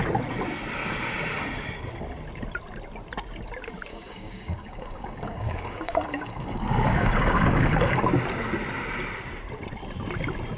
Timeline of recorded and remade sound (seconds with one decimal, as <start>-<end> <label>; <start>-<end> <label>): 0.0-3.9 recorded; 3.9-8.0 remade; 8.0-10.6 recorded